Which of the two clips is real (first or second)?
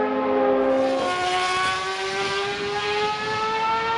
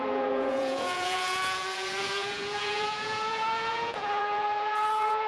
first